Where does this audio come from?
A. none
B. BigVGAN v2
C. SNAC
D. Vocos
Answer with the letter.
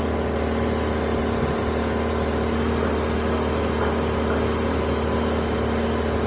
A